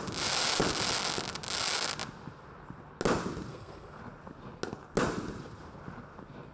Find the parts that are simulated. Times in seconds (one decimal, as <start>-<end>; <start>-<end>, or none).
3.5-4.0